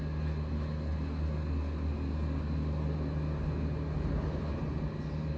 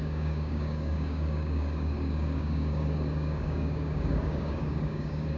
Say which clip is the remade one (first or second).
second